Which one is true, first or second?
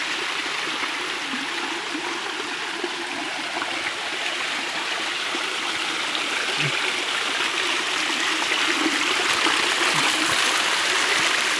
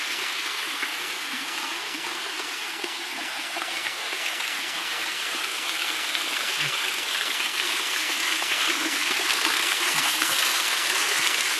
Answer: first